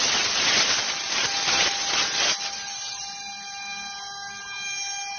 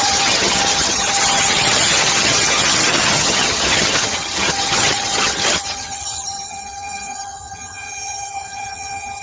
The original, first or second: first